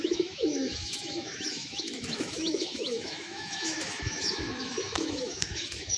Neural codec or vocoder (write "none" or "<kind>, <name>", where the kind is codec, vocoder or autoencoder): autoencoder, DAC-VAE